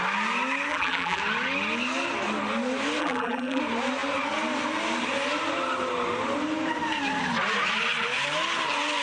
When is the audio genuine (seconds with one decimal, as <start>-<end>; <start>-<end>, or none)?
0.0-0.7; 1.2-3.0; 3.6-9.0